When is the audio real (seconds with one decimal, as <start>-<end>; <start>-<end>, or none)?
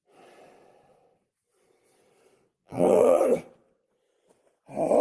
0.0-2.6; 3.2-5.0